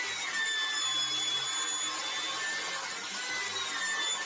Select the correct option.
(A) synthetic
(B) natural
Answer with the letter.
B